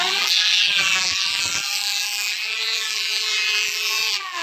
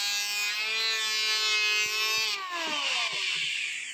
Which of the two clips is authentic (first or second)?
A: second